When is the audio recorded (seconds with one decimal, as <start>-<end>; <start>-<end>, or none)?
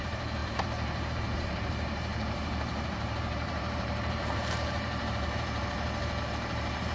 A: none